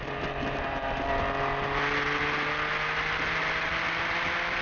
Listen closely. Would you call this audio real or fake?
real